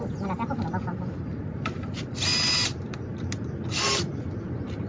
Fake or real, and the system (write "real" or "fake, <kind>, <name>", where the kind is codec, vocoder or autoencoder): real